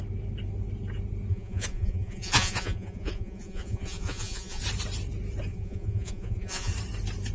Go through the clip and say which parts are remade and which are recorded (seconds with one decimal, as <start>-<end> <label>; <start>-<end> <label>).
0.0-1.3 recorded; 1.3-4.6 remade; 4.6-5.5 recorded; 5.5-6.7 remade; 6.7-7.3 recorded

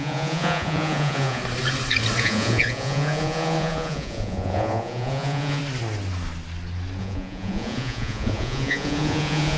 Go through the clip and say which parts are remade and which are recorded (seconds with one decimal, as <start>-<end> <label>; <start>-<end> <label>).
0.0-1.4 remade; 1.4-2.2 recorded; 2.2-5.6 remade; 5.6-7.0 recorded; 7.0-9.6 remade

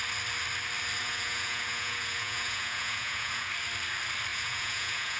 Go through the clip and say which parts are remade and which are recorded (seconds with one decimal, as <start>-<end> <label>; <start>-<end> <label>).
0.0-1.0 recorded; 1.0-3.5 remade; 3.5-4.3 recorded; 4.3-5.2 remade